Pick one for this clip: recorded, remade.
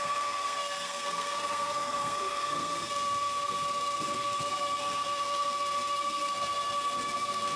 remade